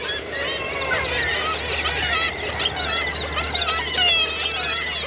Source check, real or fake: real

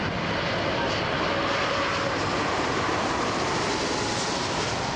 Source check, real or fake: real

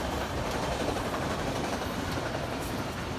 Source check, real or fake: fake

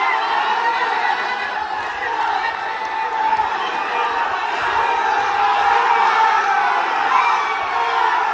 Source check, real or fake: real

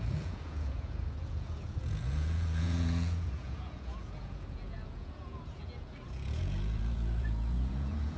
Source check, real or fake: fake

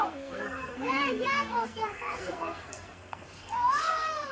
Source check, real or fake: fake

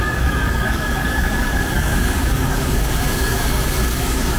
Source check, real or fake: fake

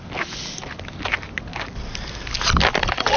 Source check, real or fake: real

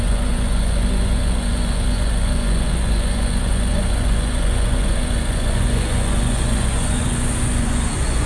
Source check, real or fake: fake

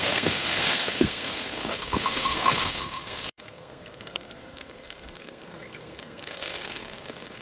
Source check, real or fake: fake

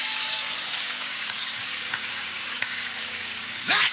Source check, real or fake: fake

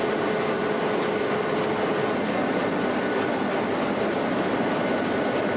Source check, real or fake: real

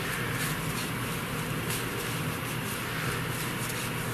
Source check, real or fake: real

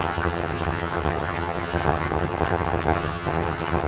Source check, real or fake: fake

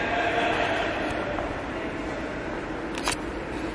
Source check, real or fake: real